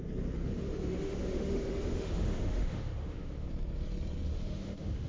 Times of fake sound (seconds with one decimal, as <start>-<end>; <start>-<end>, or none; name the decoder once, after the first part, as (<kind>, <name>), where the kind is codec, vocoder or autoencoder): 0.4-3.5 (autoencoder, DAC-VAE); 4.3-5.1